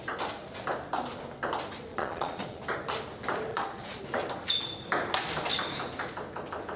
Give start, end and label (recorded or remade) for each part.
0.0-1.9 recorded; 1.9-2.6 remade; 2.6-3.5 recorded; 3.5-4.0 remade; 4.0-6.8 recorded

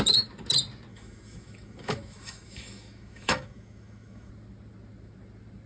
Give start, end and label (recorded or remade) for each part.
0.0-0.9 recorded; 0.9-4.3 remade; 4.3-5.7 recorded

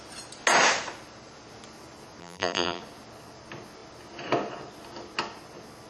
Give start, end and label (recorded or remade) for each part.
0.0-2.2 recorded; 2.2-2.8 remade; 2.8-5.9 recorded

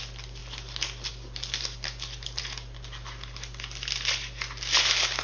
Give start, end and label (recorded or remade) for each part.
0.0-5.2 recorded

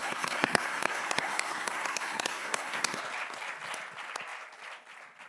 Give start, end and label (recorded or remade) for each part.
0.0-3.0 remade; 3.0-5.3 recorded

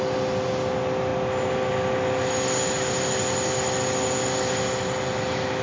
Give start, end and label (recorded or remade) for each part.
0.0-5.6 recorded